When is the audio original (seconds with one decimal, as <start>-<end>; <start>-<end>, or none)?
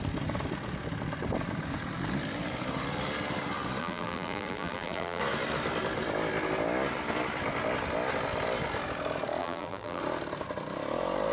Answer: 0.0-3.8; 5.2-9.4; 10.0-11.3